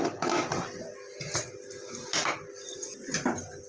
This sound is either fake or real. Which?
real